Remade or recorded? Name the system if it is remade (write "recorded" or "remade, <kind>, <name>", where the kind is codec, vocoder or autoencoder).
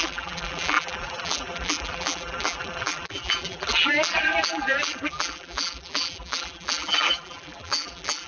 remade, vocoder, BigVGAN v2